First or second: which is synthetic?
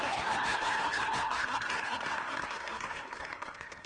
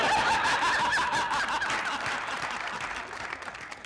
first